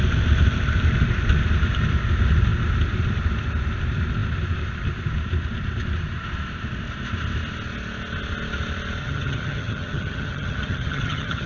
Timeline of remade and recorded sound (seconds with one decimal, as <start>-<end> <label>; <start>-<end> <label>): 0.0-9.0 recorded; 9.0-11.5 remade